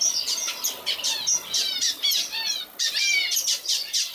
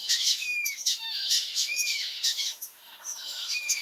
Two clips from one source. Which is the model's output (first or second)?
second